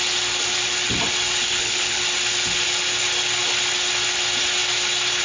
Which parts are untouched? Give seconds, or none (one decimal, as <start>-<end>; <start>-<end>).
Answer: 0.0-1.4; 2.0-5.2